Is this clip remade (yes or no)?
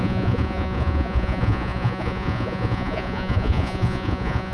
yes